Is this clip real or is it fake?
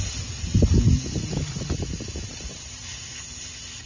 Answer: real